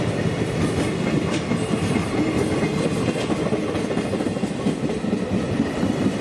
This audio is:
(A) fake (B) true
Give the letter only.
B